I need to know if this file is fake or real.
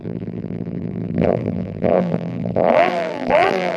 fake